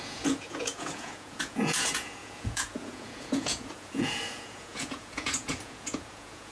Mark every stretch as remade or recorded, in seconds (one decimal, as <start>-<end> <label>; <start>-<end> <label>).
0.0-6.5 remade